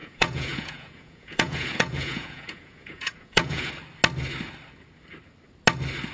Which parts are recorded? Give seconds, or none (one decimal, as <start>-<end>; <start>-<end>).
3.7-6.1